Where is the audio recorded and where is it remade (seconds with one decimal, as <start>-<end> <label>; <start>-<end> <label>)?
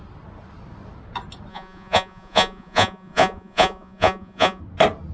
0.0-1.5 recorded; 1.5-4.6 remade; 4.6-5.1 recorded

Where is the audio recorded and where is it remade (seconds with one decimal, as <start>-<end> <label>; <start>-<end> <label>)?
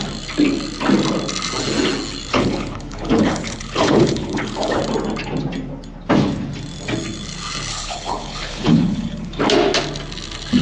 0.0-2.3 recorded; 2.3-4.8 remade; 4.8-7.7 recorded; 7.7-9.4 remade; 9.4-10.6 recorded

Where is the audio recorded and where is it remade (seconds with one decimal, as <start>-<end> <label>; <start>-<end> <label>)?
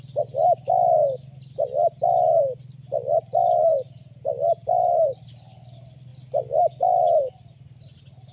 0.0-8.3 recorded